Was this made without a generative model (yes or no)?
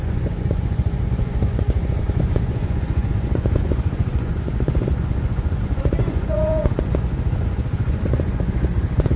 no